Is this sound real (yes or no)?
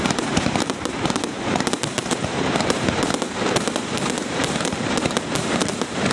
no